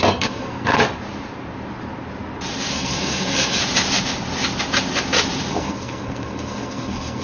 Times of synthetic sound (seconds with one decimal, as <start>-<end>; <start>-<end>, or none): 0.0-0.8; 2.7-3.6; 5.5-7.2